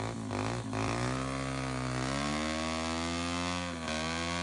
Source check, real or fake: real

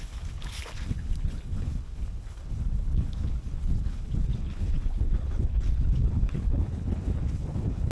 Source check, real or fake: fake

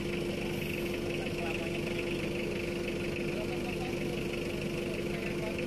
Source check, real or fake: real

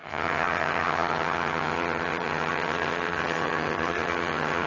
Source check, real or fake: fake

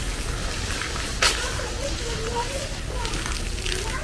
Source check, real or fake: real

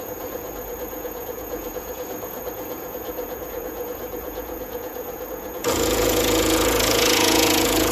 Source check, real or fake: fake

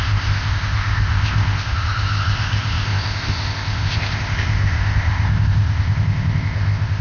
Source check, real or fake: fake